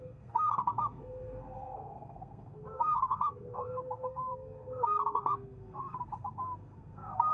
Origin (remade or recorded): remade